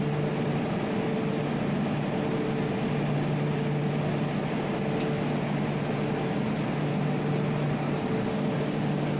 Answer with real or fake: real